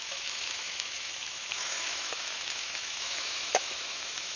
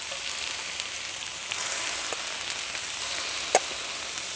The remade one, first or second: first